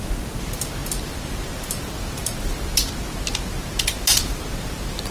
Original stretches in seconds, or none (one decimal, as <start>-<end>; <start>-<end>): 0.0-5.1